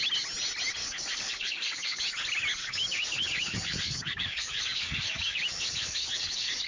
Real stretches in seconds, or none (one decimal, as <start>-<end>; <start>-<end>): 0.0-0.8; 2.0-2.6